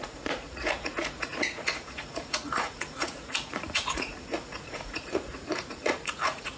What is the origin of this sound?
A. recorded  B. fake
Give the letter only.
B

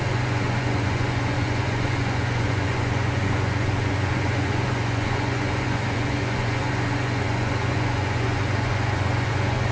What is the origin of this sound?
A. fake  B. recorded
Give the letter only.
A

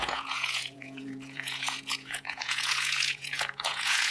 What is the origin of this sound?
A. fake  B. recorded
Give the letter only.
A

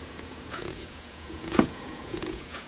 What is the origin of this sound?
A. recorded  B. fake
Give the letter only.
B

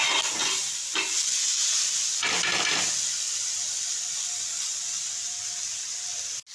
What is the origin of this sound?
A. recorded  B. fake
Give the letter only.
A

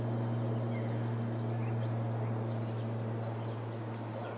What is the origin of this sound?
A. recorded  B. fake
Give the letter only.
A